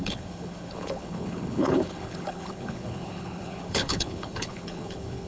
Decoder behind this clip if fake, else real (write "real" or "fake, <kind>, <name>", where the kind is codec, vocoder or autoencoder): fake, codec, HILCodec